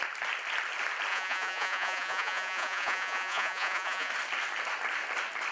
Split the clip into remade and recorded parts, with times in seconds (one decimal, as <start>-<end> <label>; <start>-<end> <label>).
0.0-1.1 recorded; 1.1-4.1 remade; 4.1-5.5 recorded